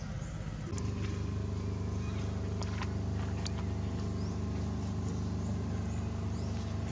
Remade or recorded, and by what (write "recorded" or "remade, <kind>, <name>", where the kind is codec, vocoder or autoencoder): recorded